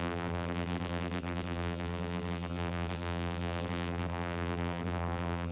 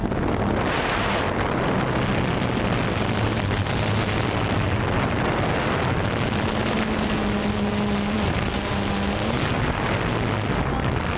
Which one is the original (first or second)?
second